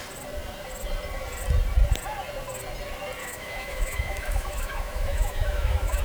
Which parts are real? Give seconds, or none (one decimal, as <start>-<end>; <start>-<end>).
0.0-3.2

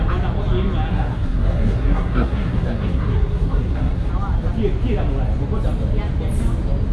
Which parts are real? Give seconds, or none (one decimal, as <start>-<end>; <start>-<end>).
0.0-0.9; 4.1-6.9

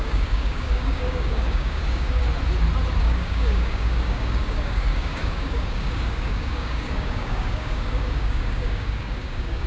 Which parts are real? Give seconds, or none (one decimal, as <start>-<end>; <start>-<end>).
2.2-3.0

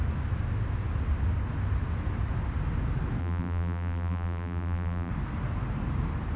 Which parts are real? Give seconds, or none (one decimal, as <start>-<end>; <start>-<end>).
0.0-3.2; 5.1-6.4

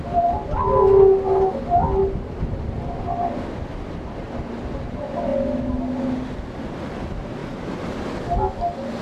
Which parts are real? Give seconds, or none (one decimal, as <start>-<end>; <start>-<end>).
0.0-7.4; 8.2-9.0